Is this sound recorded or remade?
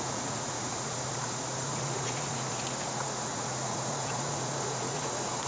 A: remade